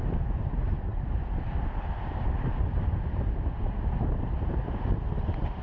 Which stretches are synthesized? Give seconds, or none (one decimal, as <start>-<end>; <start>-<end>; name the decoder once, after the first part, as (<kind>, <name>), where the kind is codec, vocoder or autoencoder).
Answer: none